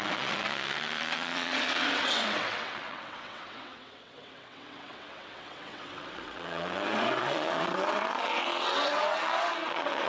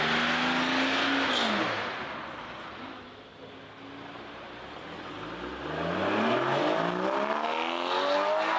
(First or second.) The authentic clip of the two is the second